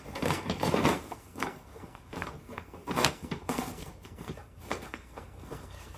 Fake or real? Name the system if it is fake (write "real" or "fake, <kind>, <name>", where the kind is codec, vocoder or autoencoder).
fake, codec, SNAC